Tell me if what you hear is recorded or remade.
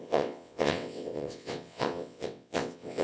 remade